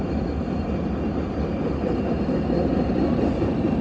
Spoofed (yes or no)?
no